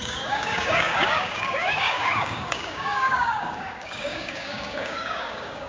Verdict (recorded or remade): remade